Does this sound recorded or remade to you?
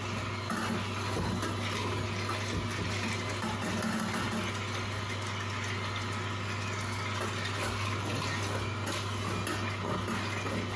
recorded